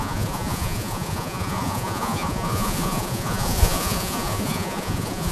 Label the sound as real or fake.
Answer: fake